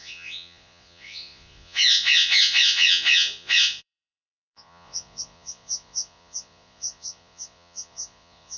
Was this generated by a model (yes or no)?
yes